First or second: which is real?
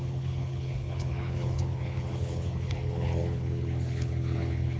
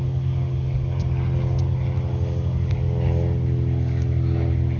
second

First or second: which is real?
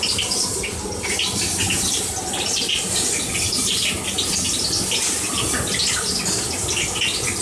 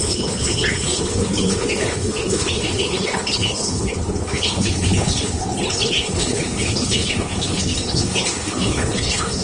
first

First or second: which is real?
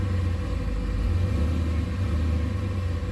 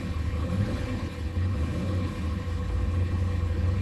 first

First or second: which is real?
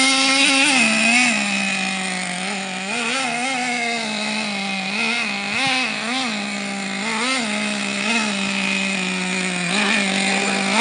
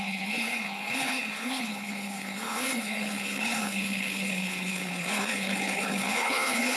first